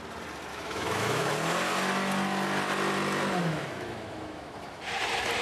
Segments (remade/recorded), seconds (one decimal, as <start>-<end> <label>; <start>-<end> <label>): 0.0-0.5 recorded; 0.5-1.3 remade; 1.3-3.4 recorded; 3.4-4.8 remade; 4.8-5.4 recorded